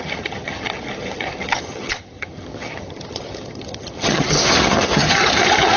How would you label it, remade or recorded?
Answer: remade